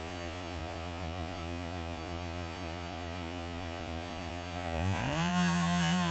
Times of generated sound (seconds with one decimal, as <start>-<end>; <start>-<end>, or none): 0.0-6.1